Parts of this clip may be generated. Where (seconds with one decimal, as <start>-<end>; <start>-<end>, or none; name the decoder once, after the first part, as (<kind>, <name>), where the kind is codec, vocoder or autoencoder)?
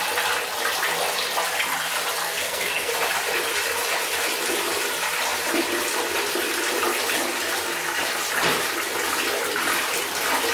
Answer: 2.2-2.9 (codec, SNAC)